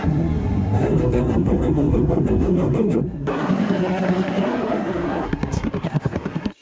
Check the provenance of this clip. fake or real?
fake